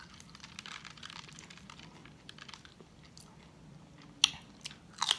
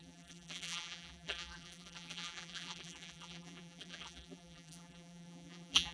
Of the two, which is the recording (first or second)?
first